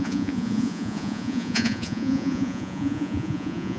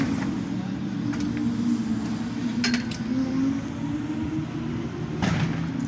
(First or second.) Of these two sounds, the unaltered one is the second